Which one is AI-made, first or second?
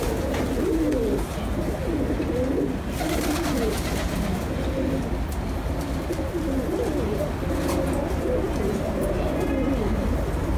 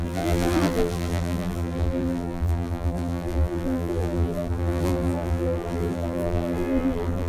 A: second